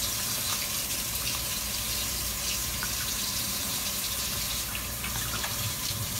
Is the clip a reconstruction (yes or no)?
yes